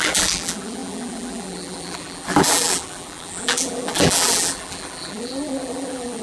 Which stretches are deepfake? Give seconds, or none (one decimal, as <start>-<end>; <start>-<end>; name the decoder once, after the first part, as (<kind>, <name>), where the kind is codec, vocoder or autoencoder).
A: 0.0-6.2 (vocoder, BigVGAN v2)